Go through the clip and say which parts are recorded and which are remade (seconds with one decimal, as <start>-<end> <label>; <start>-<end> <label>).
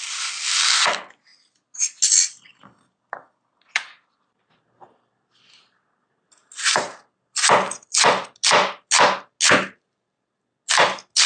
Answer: 0.0-11.3 recorded